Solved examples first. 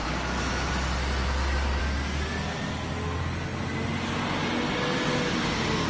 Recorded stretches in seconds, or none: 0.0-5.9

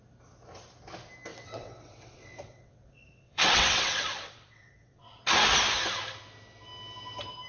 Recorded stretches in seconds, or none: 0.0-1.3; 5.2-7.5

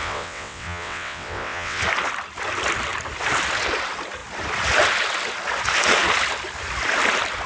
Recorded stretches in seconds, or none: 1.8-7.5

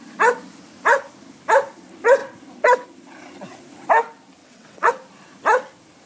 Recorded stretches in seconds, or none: 0.0-4.4; 4.9-6.1

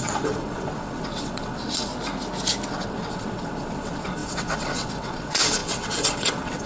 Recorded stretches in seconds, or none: 1.9-2.7

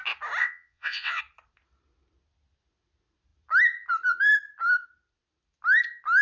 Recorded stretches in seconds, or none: 0.0-0.4; 1.2-6.2

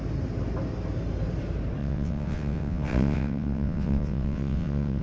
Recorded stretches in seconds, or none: 0.0-1.8

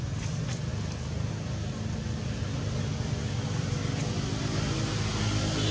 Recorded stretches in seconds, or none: 0.0-5.7